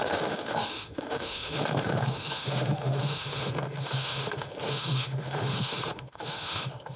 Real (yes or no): no